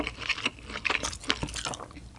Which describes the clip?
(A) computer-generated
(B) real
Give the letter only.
B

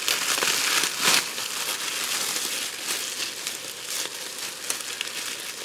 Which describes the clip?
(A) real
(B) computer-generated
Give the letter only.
A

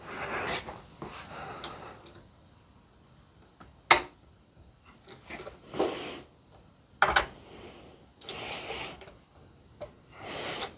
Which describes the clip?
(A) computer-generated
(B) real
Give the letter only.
B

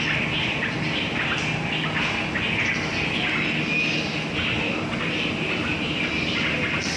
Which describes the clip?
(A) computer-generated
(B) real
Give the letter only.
B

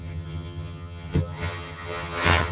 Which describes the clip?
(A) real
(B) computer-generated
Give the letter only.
B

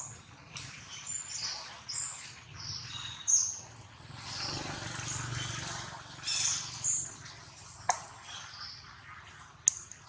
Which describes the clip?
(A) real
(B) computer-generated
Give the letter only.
A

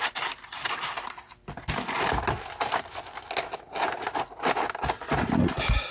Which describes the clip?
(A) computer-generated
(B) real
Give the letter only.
B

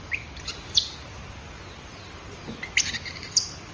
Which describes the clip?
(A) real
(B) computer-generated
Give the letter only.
A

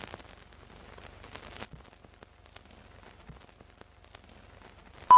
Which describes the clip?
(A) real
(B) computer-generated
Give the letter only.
A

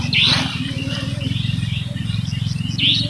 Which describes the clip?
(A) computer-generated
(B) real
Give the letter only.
B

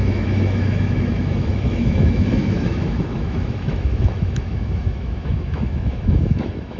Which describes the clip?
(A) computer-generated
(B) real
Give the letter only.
A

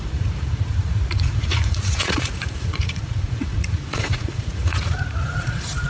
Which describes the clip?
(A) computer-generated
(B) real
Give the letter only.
A